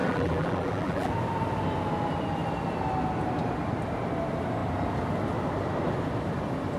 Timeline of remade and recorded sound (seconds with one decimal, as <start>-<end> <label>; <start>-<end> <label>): 0.0-1.1 remade; 1.1-6.8 recorded